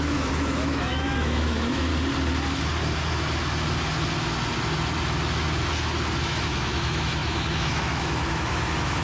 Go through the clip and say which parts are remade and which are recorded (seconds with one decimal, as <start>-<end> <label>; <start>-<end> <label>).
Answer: 0.0-1.9 remade; 1.9-6.2 recorded; 6.2-9.0 remade